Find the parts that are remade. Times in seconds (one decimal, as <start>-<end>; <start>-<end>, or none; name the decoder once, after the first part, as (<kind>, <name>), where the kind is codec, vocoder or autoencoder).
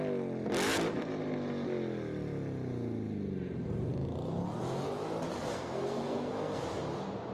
5.5-6.6 (codec, SNAC)